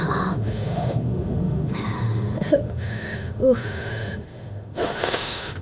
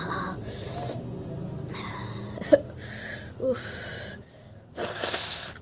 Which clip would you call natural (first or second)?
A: second